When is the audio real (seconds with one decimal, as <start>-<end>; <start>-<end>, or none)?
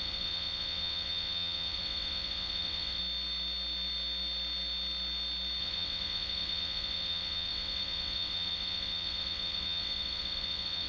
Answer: 3.0-5.6